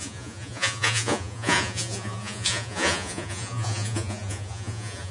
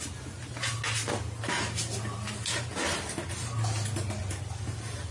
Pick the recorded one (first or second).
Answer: second